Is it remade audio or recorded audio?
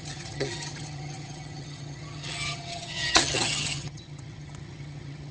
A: remade